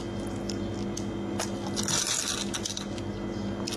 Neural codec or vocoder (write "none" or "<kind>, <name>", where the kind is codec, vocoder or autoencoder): none